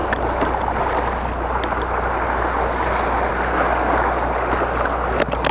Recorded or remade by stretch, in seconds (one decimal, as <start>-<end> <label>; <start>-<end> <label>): 0.0-5.5 recorded